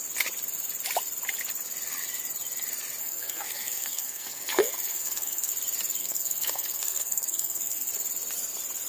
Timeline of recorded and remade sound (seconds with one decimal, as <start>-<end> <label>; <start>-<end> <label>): 0.0-3.0 recorded; 3.0-5.5 remade; 5.5-6.0 recorded; 6.0-7.9 remade; 7.9-8.9 recorded